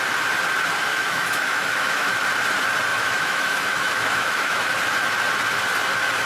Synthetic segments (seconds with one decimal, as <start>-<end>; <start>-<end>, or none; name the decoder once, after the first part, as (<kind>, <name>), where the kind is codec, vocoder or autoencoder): 0.9-2.2 (autoencoder, DAC-VAE); 2.9-4.7